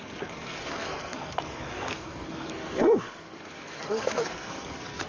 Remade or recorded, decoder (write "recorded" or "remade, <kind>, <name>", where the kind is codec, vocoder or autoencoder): remade, codec, SNAC